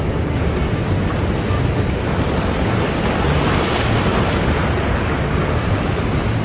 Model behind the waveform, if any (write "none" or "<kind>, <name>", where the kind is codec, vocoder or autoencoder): none